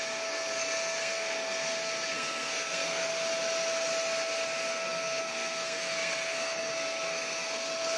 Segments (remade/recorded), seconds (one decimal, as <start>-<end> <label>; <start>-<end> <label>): 0.0-3.1 remade; 3.1-4.7 recorded; 4.7-8.0 remade